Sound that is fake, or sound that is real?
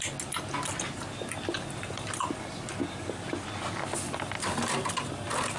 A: real